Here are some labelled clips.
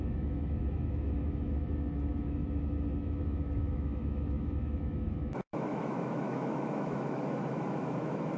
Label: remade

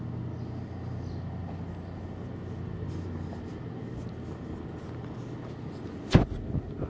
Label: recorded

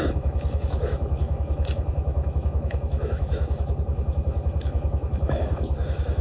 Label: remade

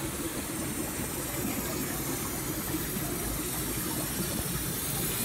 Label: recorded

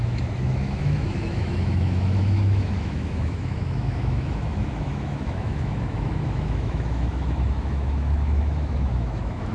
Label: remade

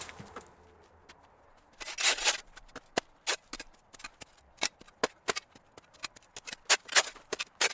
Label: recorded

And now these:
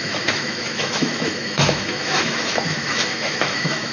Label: remade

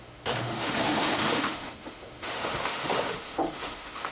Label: remade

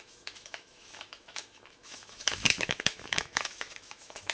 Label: remade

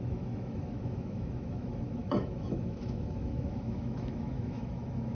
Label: remade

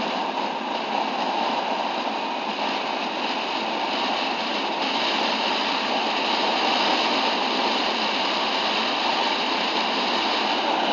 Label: recorded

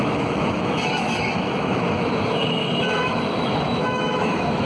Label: remade